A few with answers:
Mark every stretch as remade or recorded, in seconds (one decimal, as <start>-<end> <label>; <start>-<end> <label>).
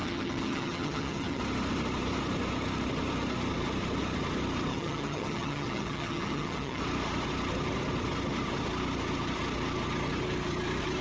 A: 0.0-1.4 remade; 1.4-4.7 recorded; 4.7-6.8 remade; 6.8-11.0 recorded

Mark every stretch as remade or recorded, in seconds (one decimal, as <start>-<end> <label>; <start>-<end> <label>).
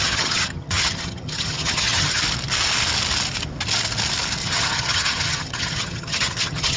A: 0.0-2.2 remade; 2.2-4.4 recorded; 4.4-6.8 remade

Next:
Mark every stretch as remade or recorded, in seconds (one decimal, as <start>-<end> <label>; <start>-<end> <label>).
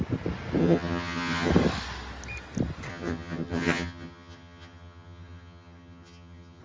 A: 0.0-0.6 recorded; 0.6-1.5 remade; 1.5-2.9 recorded; 2.9-6.6 remade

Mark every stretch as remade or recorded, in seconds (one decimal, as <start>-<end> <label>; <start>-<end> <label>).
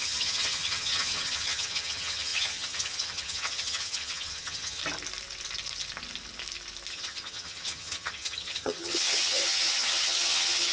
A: 0.0-4.8 remade; 4.8-6.9 recorded; 6.9-10.7 remade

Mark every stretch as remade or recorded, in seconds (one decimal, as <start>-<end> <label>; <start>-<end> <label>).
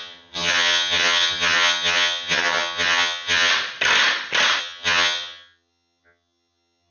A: 0.0-3.5 remade; 3.5-4.6 recorded; 4.6-6.9 remade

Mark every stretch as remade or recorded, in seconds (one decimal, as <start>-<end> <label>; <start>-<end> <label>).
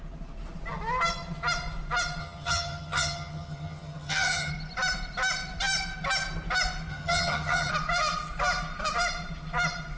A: 0.0-2.2 recorded; 2.2-4.5 remade; 4.5-6.9 recorded; 6.9-7.7 remade; 7.7-10.0 recorded